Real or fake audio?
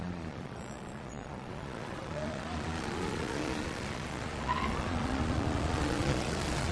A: fake